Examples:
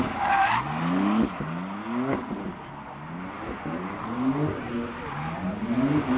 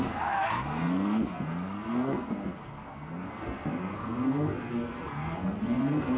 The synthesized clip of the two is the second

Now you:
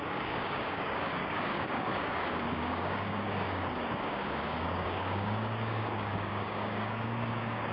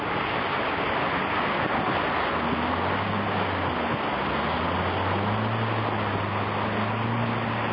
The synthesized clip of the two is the first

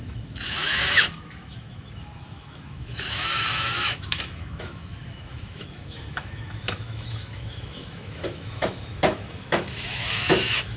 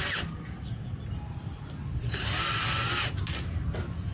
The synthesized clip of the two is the first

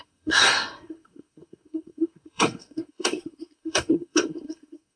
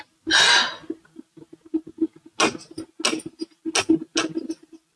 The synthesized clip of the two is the first